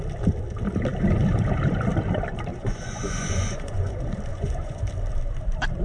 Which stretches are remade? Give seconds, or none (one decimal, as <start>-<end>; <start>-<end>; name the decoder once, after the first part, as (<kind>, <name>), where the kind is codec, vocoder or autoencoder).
2.5-3.9 (vocoder, Vocos); 4.3-4.8